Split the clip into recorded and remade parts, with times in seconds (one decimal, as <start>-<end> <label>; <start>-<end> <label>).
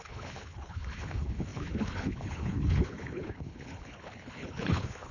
0.0-5.1 remade